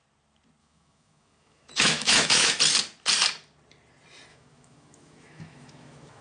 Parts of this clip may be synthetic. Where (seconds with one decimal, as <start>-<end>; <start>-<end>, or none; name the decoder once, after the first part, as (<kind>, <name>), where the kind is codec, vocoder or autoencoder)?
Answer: 0.6-2.6 (autoencoder, DAC-VAE); 4.3-6.2